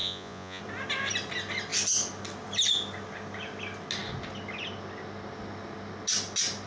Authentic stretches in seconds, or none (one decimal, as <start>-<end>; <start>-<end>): 0.6-6.7